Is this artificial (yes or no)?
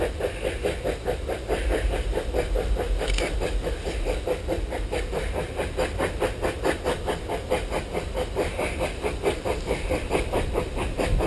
no